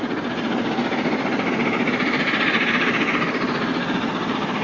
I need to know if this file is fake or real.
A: real